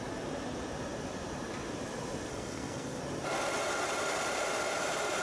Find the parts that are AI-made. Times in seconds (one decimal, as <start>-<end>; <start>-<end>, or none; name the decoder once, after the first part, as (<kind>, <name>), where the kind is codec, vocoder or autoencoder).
2.3-3.0 (codec, SNAC)